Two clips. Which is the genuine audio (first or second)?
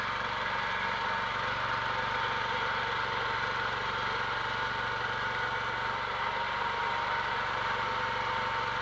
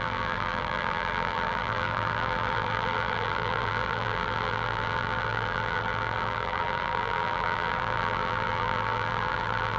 first